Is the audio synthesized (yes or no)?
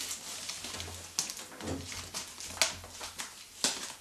no